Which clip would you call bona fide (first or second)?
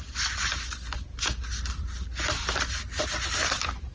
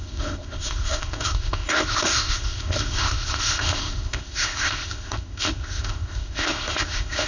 first